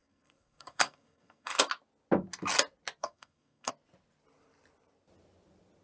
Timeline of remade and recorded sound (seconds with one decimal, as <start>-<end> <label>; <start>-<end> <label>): 0.0-1.6 remade; 1.6-3.0 recorded; 3.0-3.7 remade; 3.7-5.8 recorded